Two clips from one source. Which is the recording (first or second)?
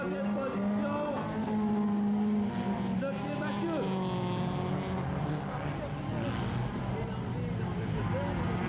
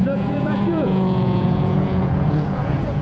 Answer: first